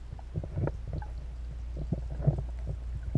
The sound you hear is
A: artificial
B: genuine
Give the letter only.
B